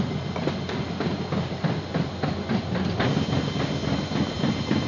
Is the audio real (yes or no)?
yes